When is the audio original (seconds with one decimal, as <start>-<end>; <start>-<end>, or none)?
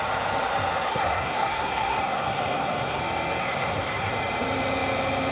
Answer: 0.0-0.9; 3.0-3.4; 4.1-5.3